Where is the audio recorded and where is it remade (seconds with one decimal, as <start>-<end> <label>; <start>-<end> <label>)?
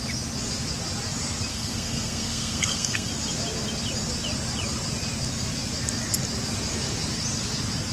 0.0-1.5 recorded; 1.5-3.1 remade; 3.1-7.9 recorded